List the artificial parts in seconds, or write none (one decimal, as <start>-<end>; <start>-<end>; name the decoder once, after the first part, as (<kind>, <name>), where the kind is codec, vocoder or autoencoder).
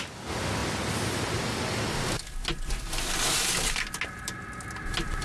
none